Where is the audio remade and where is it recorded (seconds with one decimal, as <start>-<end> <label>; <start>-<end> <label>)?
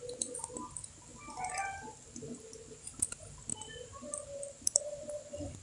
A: 0.0-1.1 remade; 1.1-1.6 recorded; 1.6-5.6 remade